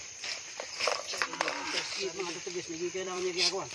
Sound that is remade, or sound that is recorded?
remade